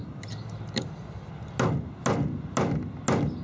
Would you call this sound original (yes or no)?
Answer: yes